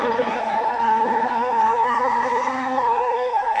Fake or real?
fake